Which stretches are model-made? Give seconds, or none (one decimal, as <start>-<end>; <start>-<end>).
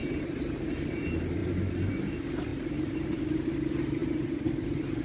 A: 0.0-1.0; 1.4-1.9; 2.5-3.5; 4.0-5.0